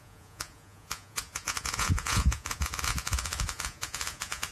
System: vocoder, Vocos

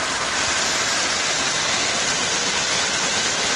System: none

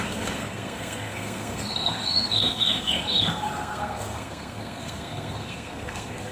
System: codec, SNAC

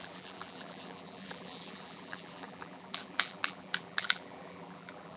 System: vocoder, BigVGAN v2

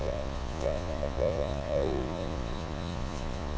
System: vocoder, Vocos